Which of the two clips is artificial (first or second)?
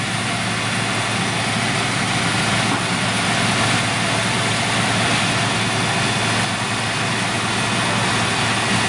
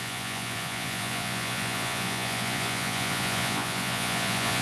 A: second